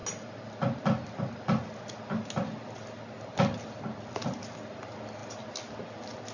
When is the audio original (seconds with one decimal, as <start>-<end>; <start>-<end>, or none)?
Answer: 0.0-6.3